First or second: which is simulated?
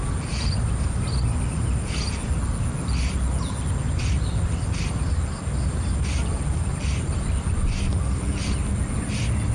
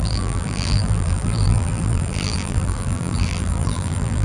second